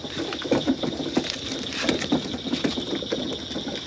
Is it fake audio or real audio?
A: real